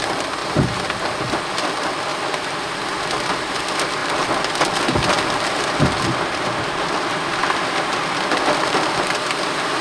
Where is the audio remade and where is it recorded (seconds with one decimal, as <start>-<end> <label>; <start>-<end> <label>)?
0.0-0.4 recorded; 0.4-1.2 remade; 1.2-2.1 recorded; 2.1-2.7 remade; 2.7-9.8 recorded